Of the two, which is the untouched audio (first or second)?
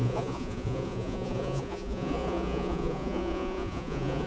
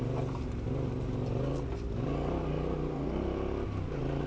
second